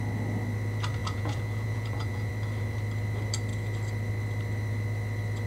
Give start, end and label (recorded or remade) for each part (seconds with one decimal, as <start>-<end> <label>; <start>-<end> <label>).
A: 0.0-1.0 recorded; 1.0-2.3 remade; 2.3-5.5 recorded